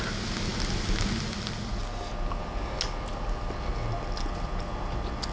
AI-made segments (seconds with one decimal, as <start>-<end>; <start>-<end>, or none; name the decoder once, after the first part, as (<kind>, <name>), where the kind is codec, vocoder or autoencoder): none